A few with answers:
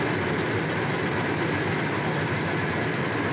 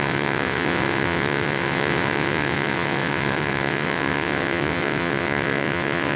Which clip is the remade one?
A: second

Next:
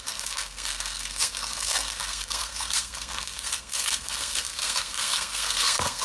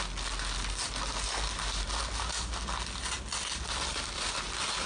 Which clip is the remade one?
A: first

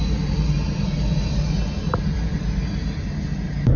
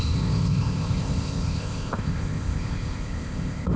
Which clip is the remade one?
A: second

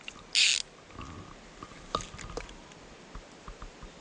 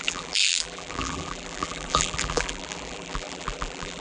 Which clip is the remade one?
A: second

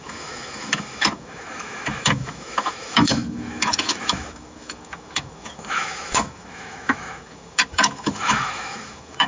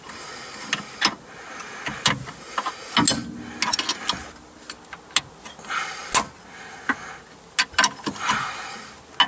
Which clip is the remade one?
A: first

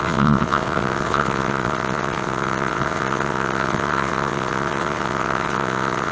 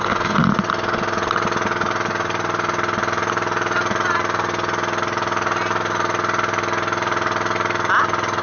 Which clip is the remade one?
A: first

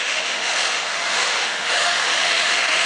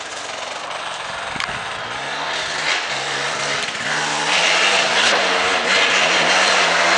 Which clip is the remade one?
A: first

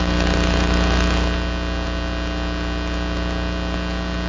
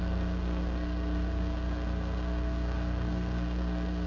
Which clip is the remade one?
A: second